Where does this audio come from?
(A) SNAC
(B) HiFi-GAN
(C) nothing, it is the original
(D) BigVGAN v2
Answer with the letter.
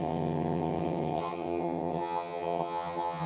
B